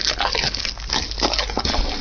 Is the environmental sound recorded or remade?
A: recorded